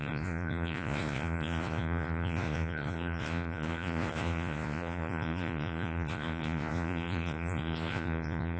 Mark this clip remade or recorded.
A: remade